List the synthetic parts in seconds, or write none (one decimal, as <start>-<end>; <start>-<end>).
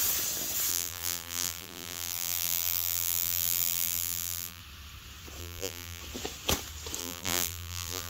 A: 0.7-4.6; 5.4-6.0; 7.0-8.1